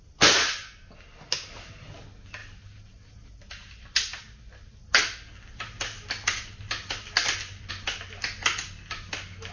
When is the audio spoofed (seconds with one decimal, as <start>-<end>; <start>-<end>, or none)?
none